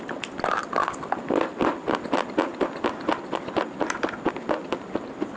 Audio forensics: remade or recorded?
recorded